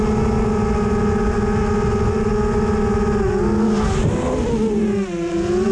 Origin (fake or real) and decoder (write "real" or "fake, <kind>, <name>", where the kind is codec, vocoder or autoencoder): real